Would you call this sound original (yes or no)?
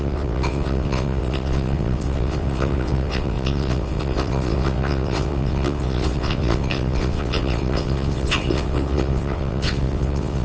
no